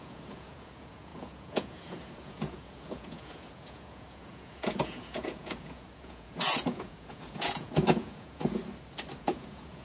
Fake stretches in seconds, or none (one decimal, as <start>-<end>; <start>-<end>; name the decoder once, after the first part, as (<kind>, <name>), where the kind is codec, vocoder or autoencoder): 0.0-8.6 (vocoder, Vocos); 9.2-9.8